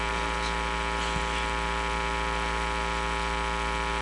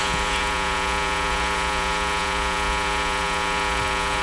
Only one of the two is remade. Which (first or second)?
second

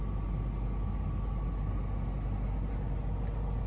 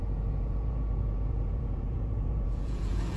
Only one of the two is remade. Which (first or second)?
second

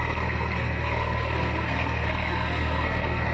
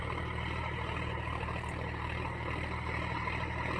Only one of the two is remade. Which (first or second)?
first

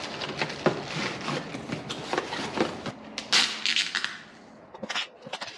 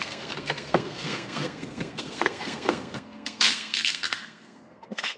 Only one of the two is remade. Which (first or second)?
second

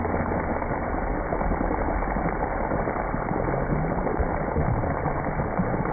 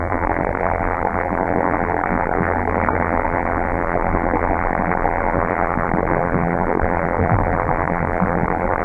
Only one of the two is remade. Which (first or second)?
second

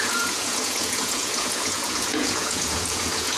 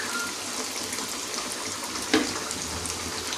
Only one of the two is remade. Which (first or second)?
first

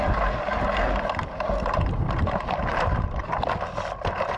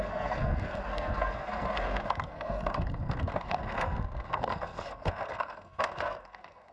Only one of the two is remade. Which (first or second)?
second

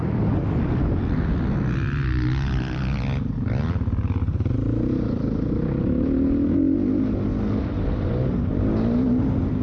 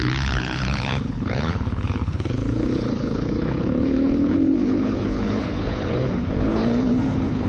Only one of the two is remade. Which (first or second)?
second